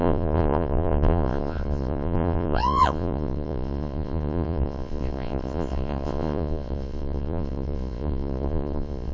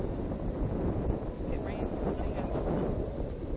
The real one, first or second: second